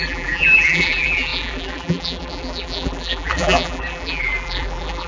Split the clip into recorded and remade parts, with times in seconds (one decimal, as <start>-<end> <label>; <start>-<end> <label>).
0.0-5.1 remade